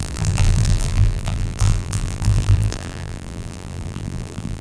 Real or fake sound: fake